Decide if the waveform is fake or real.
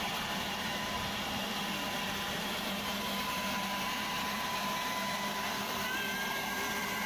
fake